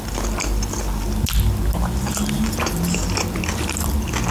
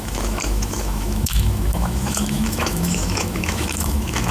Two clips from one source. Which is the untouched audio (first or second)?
first